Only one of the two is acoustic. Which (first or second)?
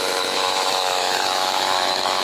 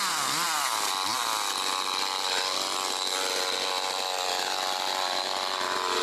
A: second